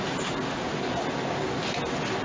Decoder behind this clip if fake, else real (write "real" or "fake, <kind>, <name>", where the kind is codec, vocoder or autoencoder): real